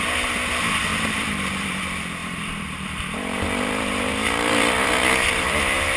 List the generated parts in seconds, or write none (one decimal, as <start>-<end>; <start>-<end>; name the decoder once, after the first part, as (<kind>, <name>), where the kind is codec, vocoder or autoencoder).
0.9-1.8 (vocoder, BigVGAN v2); 2.2-5.6